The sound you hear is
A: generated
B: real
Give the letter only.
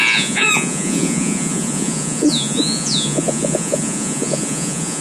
A